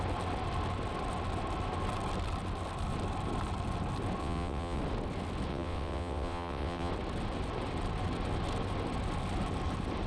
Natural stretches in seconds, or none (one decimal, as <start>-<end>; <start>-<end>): 0.0-4.2; 4.8-5.5; 6.9-10.1